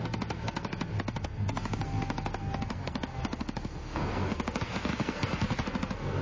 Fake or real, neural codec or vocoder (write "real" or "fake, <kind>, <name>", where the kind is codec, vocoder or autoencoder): fake, codec, SNAC